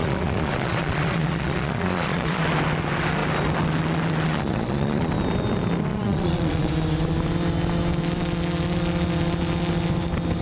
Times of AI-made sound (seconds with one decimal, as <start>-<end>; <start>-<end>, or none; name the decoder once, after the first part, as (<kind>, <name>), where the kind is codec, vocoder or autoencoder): 0.0-2.4 (vocoder, Vocos); 4.3-5.1; 5.9-6.7